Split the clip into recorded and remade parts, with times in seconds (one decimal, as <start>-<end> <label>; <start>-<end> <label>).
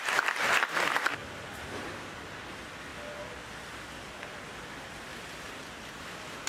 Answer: 0.0-1.2 recorded; 1.2-1.9 remade; 1.9-2.9 recorded; 2.9-4.1 remade; 4.1-5.1 recorded; 5.1-6.5 remade